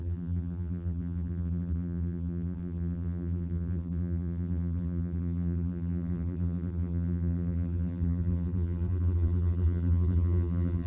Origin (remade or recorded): remade